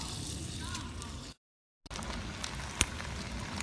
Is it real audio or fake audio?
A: real